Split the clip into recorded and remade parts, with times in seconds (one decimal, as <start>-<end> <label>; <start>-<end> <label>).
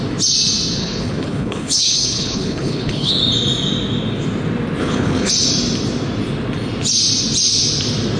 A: 0.0-0.8 recorded; 0.8-3.1 remade; 3.1-4.8 recorded; 4.8-5.3 remade; 5.3-8.2 recorded